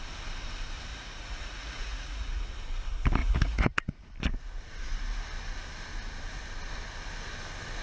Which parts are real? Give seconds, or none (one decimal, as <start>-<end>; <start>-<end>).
0.0-0.9; 2.4-3.2; 4.1-7.8